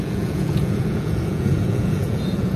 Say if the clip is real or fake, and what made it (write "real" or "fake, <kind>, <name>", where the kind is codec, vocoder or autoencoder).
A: fake, vocoder, Vocos